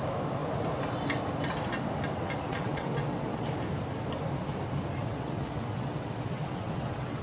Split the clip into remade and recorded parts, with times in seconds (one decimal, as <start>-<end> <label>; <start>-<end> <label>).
0.0-2.5 recorded; 2.5-3.5 remade; 3.5-5.0 recorded; 5.0-7.2 remade